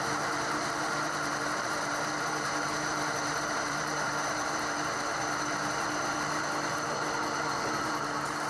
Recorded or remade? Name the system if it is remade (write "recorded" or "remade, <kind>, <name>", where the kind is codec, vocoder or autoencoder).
remade, vocoder, BigVGAN v2